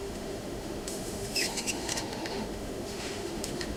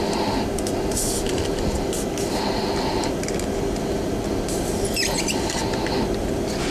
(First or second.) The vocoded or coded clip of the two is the first